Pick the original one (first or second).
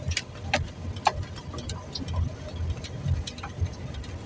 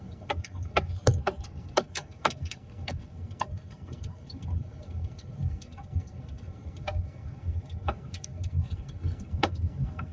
first